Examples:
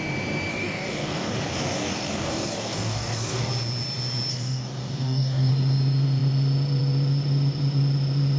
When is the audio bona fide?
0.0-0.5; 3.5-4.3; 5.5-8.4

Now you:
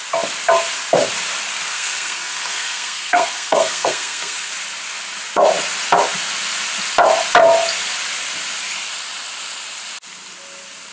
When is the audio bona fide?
0.0-1.7; 4.5-10.9

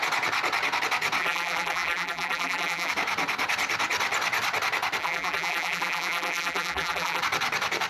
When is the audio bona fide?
0.0-1.2; 2.9-5.0; 7.2-7.9

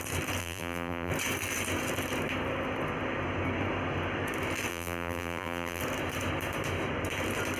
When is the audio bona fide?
0.0-0.4; 1.1-4.7; 5.8-7.6

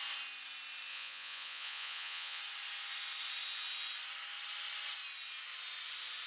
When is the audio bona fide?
0.0-0.9; 2.4-6.3

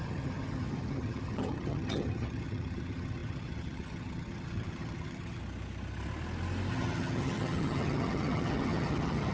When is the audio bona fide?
5.4-6.7

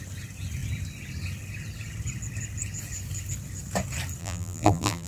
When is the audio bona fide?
0.0-4.2

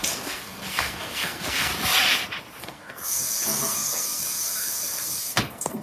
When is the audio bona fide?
1.7-2.6